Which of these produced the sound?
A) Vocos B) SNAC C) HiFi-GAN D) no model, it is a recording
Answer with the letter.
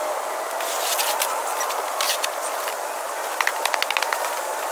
D